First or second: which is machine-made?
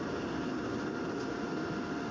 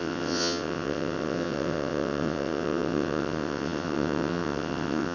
second